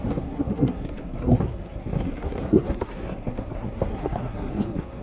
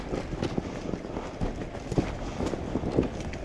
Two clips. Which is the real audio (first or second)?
second